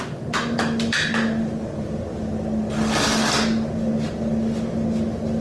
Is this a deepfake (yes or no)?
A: no